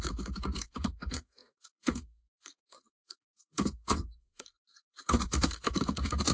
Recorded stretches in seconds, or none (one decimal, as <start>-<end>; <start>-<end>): none